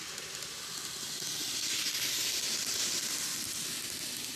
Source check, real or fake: real